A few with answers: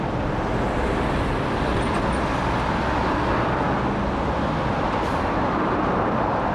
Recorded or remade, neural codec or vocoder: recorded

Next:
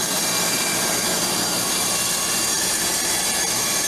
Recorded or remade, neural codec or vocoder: remade, vocoder, BigVGAN v2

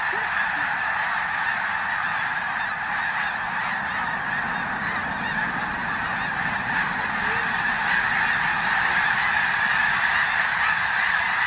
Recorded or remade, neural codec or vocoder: recorded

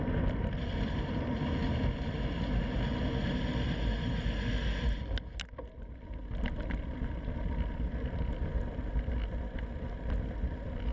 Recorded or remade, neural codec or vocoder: recorded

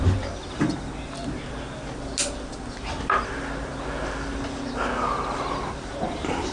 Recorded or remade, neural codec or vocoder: recorded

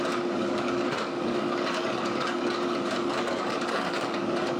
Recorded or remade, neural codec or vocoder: remade, codec, DAC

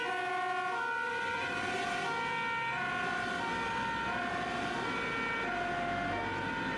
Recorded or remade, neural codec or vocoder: recorded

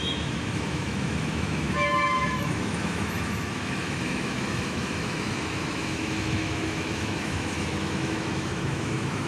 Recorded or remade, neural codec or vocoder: remade, autoencoder, DAC-VAE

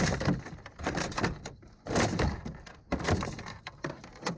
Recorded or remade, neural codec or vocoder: recorded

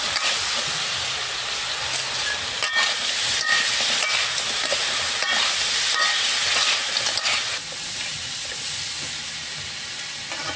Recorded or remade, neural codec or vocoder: recorded